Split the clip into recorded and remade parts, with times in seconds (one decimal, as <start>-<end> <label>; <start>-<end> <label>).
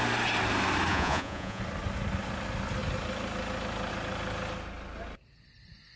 0.0-0.9 recorded; 0.9-1.6 remade; 1.6-6.0 recorded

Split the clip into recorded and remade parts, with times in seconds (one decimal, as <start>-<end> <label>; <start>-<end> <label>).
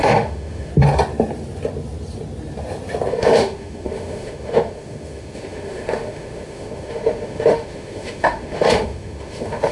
0.0-0.7 remade; 0.7-3.1 recorded; 3.1-9.7 remade